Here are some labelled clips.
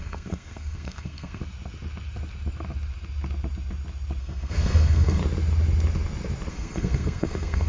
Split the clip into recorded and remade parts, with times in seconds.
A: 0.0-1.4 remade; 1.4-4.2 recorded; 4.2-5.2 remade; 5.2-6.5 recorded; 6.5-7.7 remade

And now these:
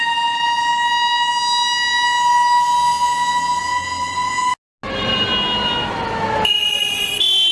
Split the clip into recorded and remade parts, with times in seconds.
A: 0.0-7.5 recorded

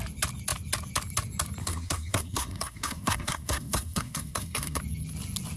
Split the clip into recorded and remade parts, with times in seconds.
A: 0.0-1.6 recorded; 1.6-4.8 remade; 4.8-5.6 recorded

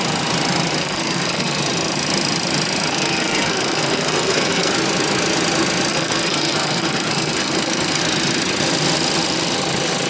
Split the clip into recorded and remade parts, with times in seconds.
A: 0.0-0.8 recorded; 0.8-1.6 remade; 1.6-2.9 recorded; 2.9-4.7 remade; 4.7-5.9 recorded; 5.9-8.0 remade; 8.0-10.1 recorded

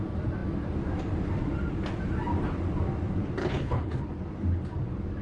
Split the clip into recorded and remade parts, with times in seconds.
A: 0.0-3.4 recorded; 3.4-4.0 remade; 4.0-5.2 recorded